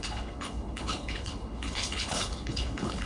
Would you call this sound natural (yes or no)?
no